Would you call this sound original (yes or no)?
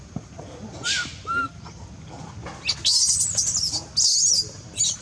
yes